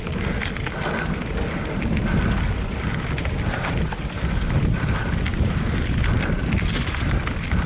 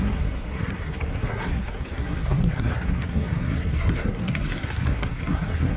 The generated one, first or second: second